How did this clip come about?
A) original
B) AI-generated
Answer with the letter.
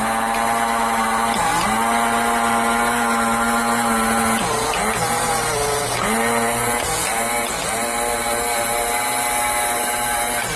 A